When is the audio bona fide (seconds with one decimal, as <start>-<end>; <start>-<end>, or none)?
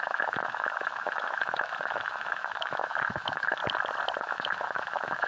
3.6-4.2